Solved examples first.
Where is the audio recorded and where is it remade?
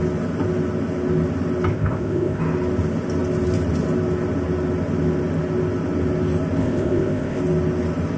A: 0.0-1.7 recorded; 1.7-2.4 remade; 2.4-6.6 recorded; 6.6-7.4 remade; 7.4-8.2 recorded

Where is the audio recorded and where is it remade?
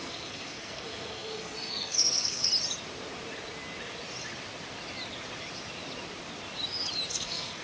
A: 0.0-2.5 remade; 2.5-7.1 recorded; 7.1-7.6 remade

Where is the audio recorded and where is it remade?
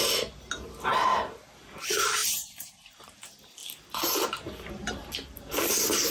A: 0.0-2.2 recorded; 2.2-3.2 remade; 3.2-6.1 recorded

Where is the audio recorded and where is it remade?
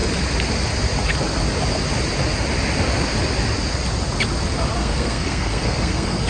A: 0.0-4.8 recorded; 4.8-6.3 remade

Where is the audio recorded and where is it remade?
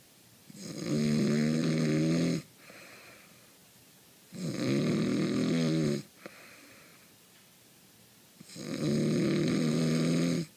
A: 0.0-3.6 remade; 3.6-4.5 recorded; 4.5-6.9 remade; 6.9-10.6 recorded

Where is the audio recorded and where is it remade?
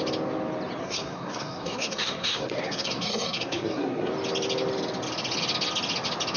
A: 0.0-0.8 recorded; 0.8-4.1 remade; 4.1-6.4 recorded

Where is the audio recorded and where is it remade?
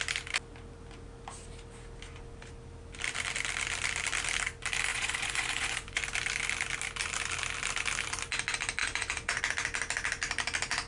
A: 0.0-4.9 recorded; 4.9-6.0 remade; 6.0-8.8 recorded; 8.8-9.4 remade; 9.4-10.9 recorded